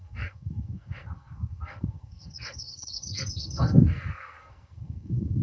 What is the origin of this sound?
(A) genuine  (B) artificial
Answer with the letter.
B